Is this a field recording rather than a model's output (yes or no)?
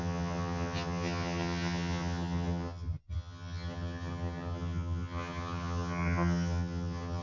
no